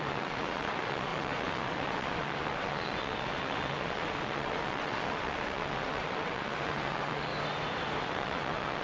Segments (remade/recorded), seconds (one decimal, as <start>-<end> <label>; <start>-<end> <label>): 0.0-7.3 remade; 7.3-8.0 recorded; 8.0-8.8 remade